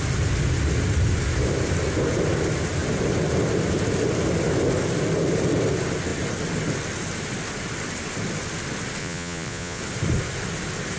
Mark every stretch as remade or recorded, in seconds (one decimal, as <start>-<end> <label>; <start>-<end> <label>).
0.0-9.0 recorded; 9.0-9.8 remade; 9.8-11.0 recorded